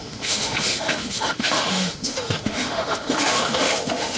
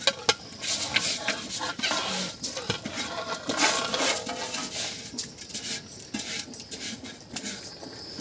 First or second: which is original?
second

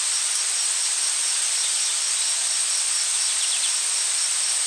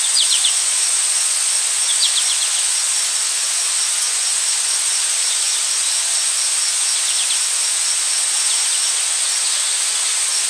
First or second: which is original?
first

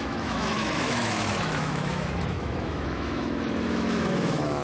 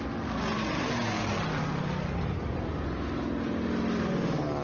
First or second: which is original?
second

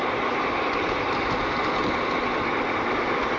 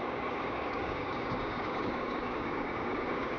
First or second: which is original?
first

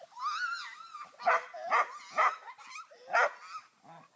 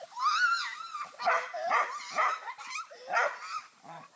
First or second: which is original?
first